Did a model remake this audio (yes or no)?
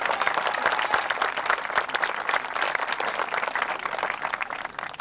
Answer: no